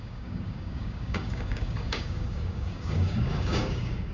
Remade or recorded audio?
remade